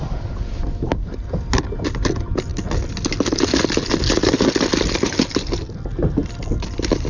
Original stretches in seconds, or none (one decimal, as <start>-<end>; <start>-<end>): 0.0-7.1